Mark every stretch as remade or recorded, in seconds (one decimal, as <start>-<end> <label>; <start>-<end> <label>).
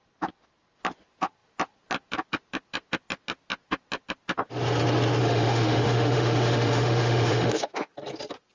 0.0-5.2 recorded; 5.2-7.9 remade; 7.9-8.5 recorded